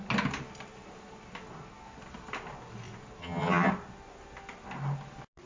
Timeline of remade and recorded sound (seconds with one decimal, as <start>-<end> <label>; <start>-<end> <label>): 0.0-3.2 recorded; 3.2-3.7 remade; 3.7-5.5 recorded